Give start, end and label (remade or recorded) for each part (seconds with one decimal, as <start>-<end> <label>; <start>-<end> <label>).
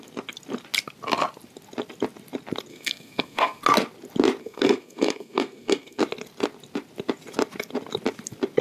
0.0-2.7 recorded; 2.7-3.6 remade; 3.6-4.4 recorded; 4.4-6.0 remade; 6.0-8.6 recorded